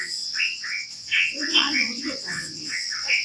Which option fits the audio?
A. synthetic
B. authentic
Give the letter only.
A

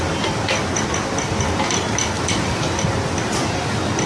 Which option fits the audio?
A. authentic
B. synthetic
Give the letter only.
A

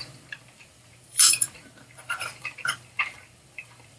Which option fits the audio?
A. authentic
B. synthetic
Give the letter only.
B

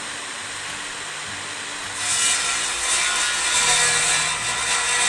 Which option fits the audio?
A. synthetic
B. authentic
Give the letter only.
B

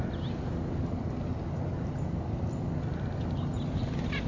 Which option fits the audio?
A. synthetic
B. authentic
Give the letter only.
B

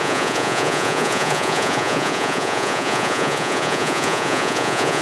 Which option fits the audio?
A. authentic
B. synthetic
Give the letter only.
B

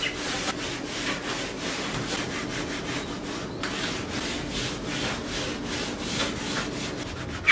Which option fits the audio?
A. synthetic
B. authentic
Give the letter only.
B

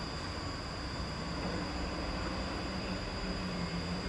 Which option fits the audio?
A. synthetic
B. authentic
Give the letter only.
B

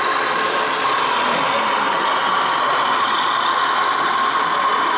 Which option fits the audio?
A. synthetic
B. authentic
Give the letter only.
B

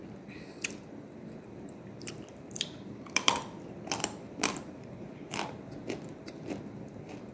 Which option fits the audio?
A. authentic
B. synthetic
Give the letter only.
B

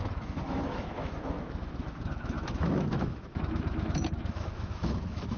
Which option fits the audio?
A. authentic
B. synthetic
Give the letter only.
B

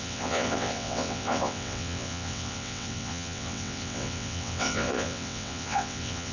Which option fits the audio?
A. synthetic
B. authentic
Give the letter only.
A